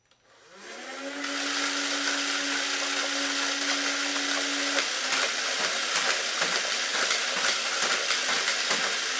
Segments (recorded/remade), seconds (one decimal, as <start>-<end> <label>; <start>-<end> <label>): 0.0-9.2 recorded